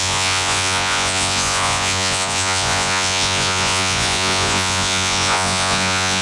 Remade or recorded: remade